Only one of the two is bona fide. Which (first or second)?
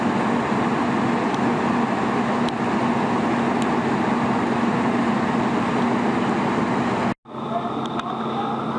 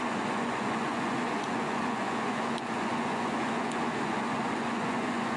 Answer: first